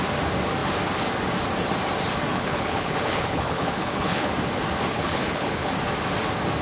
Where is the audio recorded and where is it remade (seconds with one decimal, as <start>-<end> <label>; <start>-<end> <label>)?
0.0-2.3 recorded; 2.3-4.3 remade; 4.3-4.9 recorded; 4.9-5.7 remade; 5.7-6.6 recorded